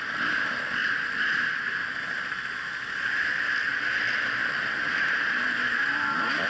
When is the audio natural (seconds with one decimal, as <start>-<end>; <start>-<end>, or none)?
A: 0.0-6.5